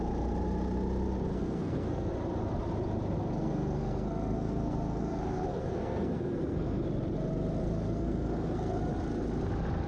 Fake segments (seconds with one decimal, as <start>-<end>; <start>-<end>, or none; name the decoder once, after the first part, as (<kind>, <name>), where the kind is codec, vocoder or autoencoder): 1.3-2.1 (codec, SNAC); 3.4-6.8; 7.6-8.8